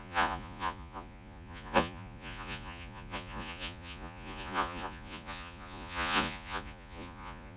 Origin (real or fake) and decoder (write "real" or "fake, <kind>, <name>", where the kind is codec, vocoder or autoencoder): fake, vocoder, Vocos